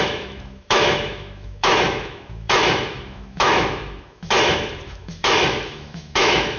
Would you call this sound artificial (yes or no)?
yes